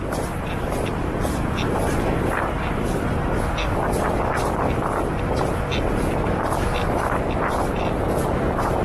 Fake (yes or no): no